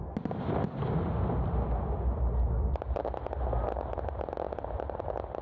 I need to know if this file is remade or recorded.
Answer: recorded